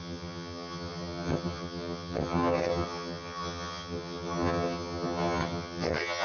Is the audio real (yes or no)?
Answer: no